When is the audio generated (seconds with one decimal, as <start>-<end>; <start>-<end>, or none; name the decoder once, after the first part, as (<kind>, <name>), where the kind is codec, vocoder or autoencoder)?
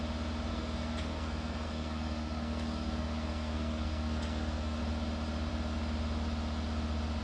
0.5-4.8 (codec, SNAC)